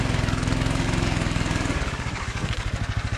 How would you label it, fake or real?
fake